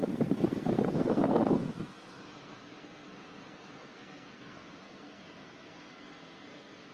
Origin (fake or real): fake